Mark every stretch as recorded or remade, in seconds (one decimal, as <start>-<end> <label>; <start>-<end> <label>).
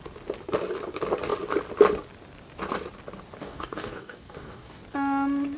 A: 0.0-3.4 recorded; 3.4-4.8 remade; 4.8-5.6 recorded